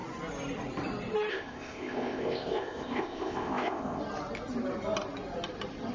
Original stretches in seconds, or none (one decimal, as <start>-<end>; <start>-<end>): 0.0-1.3; 4.0-5.9